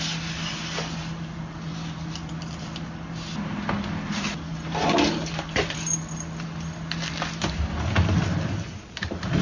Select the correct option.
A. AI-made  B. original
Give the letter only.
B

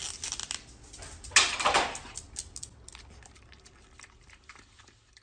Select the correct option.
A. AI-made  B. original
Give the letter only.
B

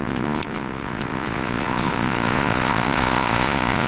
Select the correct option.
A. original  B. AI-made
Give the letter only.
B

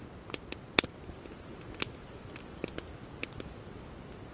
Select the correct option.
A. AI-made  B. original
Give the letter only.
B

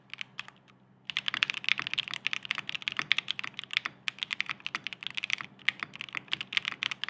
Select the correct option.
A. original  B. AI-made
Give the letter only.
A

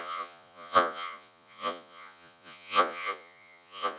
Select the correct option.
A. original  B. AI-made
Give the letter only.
B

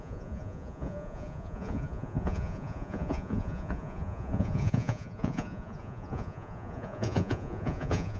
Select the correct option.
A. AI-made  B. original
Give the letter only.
A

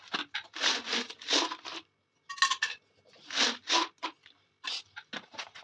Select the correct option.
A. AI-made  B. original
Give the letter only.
B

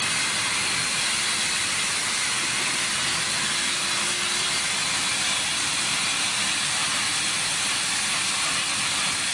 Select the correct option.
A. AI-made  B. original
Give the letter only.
B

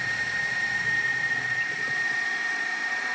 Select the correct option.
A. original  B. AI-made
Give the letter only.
B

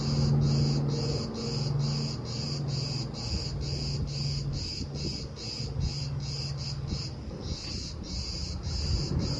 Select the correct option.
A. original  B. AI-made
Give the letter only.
A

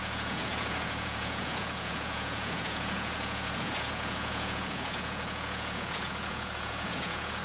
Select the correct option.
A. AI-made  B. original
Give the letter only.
A